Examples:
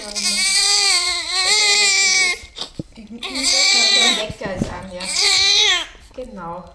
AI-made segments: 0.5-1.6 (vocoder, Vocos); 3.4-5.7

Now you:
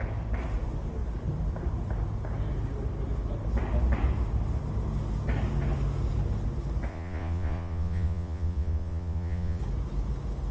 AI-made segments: 6.9-9.6 (vocoder, Vocos)

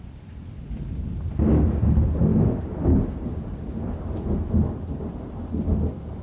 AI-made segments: none